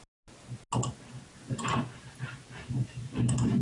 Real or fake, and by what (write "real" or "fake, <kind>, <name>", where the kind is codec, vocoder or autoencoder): real